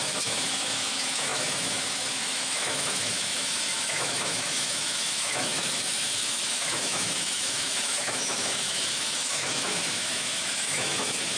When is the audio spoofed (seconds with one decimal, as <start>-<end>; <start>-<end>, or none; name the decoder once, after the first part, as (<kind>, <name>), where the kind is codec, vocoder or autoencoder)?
0.0-11.4 (autoencoder, DAC-VAE)